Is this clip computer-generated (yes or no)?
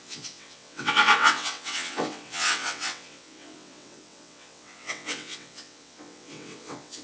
yes